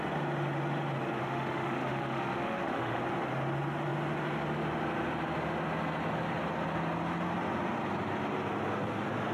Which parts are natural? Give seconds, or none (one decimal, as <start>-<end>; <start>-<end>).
0.0-1.2; 3.0-9.3